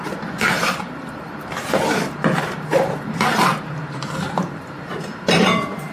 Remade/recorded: remade